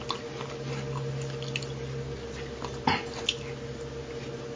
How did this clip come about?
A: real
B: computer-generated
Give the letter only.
A